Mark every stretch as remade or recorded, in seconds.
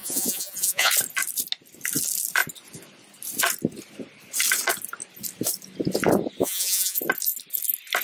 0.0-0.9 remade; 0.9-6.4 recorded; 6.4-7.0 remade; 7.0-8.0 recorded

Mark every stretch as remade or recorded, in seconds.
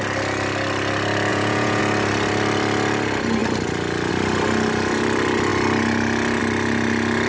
0.0-1.3 recorded; 1.3-1.8 remade; 1.8-7.3 recorded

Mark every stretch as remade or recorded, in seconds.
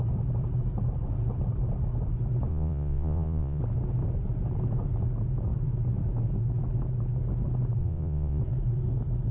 0.0-2.5 recorded; 2.5-3.6 remade; 3.6-7.8 recorded; 7.8-8.4 remade; 8.4-9.3 recorded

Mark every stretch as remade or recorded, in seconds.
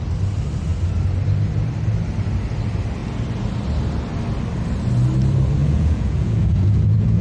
0.0-5.6 recorded; 5.6-7.2 remade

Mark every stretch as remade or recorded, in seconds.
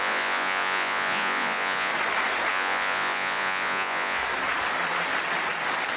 0.0-1.9 remade; 1.9-2.5 recorded; 2.5-4.2 remade; 4.2-6.0 recorded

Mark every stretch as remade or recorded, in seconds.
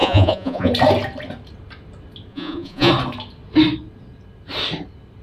0.0-0.7 remade; 0.7-2.3 recorded; 2.3-2.9 remade; 2.9-5.2 recorded